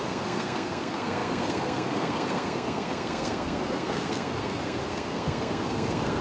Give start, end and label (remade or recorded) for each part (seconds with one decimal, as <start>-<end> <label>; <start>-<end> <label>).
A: 0.0-6.2 remade